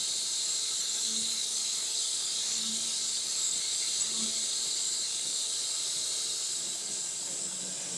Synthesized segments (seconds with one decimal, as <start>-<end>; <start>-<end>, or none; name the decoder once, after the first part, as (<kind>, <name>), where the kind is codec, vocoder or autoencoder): 0.8-3.9 (codec, DAC); 4.7-5.4; 6.5-7.6